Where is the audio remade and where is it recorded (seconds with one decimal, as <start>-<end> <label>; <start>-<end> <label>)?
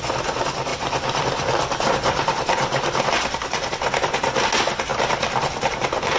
0.0-0.7 recorded; 0.7-3.1 remade; 3.1-6.2 recorded